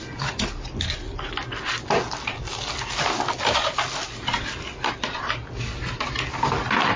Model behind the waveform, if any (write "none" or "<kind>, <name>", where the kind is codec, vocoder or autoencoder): none